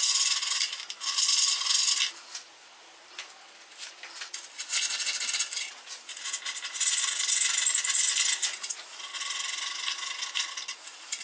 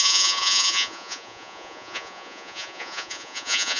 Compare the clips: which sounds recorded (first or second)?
first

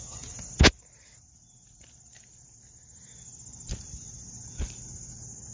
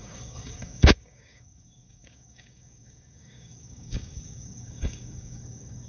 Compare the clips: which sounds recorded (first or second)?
first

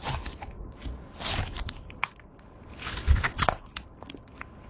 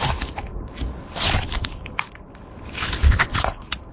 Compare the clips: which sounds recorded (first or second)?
first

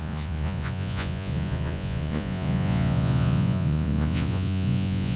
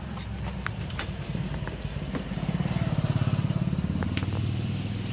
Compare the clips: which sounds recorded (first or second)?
second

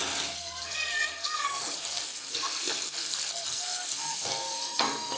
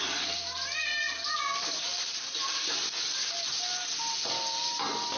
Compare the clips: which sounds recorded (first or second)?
second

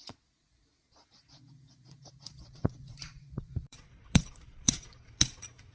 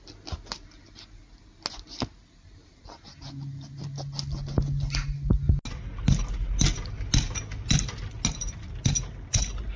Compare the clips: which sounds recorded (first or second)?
second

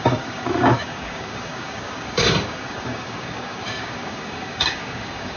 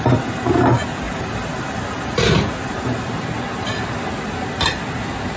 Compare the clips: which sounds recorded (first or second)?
second